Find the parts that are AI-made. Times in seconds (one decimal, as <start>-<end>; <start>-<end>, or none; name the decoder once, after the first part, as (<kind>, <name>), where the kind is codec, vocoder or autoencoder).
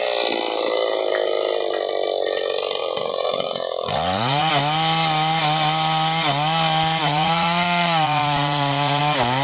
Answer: 2.8-4.5 (vocoder, Vocos); 7.0-9.0